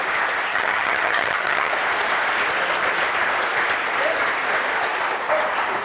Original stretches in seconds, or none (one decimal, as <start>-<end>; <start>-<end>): 0.0-0.5; 1.7-5.8